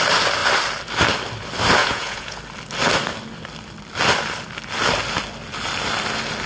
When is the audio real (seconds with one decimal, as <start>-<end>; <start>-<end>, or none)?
0.0-1.8; 2.4-6.5